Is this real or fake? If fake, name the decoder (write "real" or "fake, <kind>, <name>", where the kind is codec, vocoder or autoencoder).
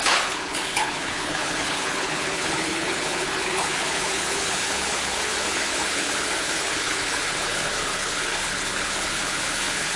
fake, codec, HILCodec